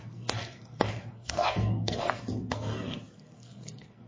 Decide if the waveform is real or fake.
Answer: fake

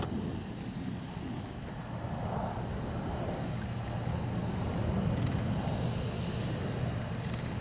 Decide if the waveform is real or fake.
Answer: real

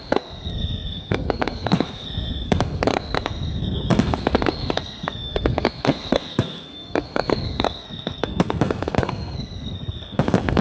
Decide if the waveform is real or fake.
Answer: fake